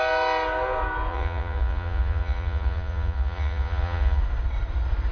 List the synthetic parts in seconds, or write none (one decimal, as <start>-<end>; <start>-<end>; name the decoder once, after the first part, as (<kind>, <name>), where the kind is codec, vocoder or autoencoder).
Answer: 1.1-4.2 (vocoder, Vocos)